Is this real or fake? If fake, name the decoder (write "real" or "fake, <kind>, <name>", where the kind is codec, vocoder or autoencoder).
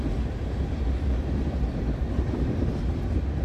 real